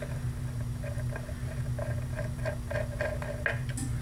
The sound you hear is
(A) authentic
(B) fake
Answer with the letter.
A